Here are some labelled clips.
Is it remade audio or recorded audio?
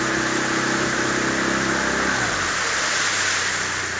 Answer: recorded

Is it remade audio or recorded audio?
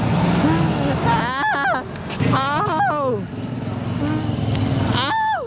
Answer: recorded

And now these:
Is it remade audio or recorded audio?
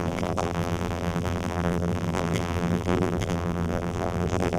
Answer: remade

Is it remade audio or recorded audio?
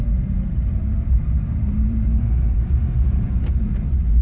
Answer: remade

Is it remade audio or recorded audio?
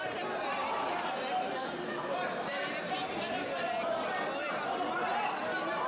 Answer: recorded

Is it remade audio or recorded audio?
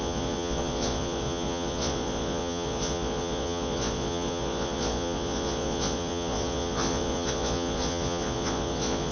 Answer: remade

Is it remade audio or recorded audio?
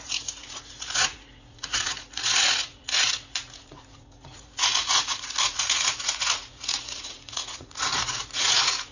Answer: remade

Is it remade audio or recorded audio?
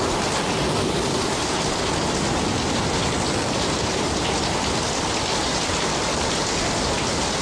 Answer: recorded